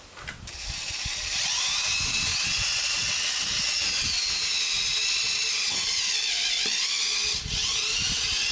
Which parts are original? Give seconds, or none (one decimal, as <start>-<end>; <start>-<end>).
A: 0.0-2.3; 3.8-5.0; 6.1-8.5